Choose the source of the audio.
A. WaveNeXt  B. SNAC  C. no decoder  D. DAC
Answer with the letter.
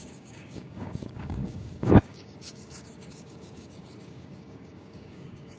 D